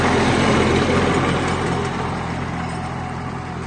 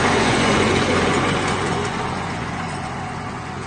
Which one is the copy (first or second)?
second